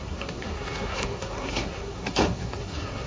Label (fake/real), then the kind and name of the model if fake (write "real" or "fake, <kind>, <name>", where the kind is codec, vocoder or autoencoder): fake, codec, SNAC